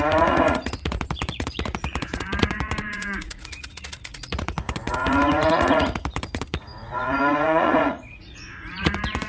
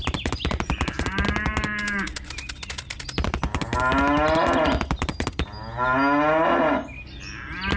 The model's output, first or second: first